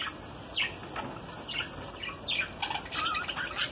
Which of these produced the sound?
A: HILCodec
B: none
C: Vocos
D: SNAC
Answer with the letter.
B